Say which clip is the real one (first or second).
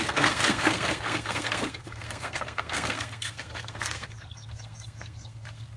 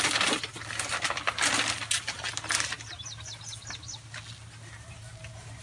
second